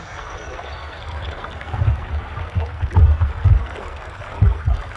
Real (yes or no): no